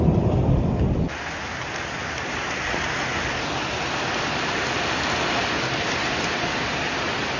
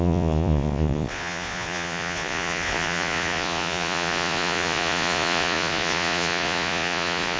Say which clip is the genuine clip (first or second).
first